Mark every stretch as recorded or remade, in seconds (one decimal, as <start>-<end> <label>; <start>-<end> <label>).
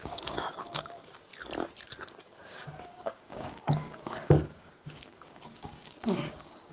0.0-1.3 remade; 1.3-2.0 recorded; 2.0-6.7 remade